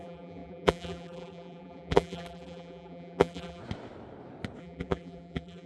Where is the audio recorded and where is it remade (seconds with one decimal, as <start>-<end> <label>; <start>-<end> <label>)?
0.0-3.6 remade; 3.6-4.6 recorded; 4.6-5.7 remade